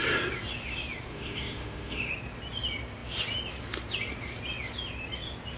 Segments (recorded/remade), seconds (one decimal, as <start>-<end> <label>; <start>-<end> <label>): 0.0-1.1 recorded; 1.1-2.1 remade; 2.1-5.6 recorded